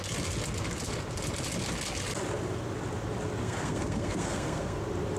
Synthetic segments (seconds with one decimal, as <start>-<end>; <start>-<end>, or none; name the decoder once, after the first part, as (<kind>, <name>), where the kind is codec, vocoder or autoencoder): 3.4-4.8 (codec, SNAC)